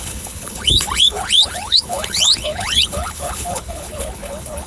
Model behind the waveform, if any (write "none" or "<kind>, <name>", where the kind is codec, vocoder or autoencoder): codec, HILCodec